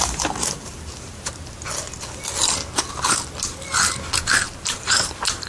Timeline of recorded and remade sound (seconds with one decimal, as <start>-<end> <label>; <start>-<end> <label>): 0.0-1.3 remade; 1.3-4.6 recorded; 4.6-5.5 remade